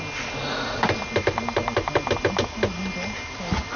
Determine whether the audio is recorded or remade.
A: recorded